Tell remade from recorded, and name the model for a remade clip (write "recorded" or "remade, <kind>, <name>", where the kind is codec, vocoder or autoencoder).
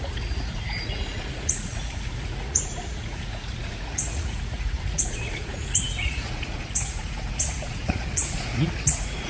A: remade, vocoder, Vocos